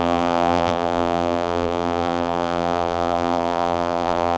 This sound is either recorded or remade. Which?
remade